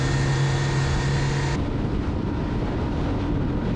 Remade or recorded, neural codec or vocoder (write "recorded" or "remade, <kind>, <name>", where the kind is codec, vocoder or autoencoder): recorded